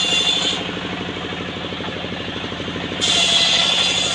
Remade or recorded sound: recorded